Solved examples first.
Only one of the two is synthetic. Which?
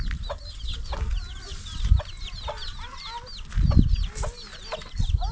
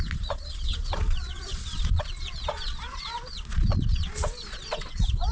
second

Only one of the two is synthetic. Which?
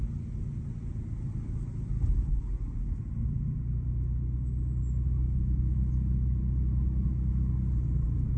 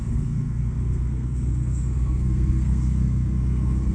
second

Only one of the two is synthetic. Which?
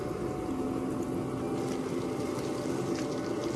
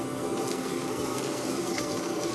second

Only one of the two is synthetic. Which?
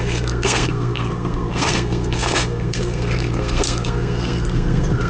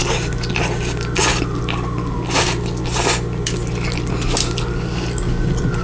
first